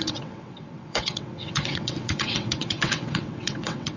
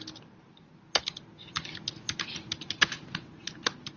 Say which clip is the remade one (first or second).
first